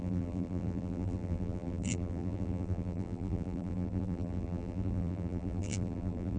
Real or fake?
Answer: fake